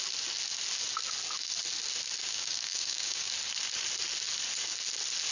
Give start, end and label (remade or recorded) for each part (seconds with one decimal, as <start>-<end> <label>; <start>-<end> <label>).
0.0-2.2 recorded; 2.2-3.3 remade; 3.3-5.3 recorded